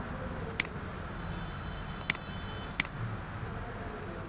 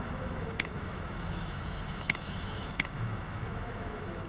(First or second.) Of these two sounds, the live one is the first